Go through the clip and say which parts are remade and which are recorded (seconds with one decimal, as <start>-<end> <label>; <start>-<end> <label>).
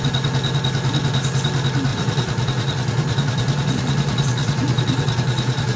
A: 0.0-1.9 recorded; 1.9-5.8 remade